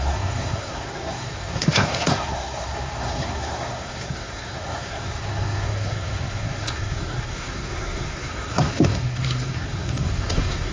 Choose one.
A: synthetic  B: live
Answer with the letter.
A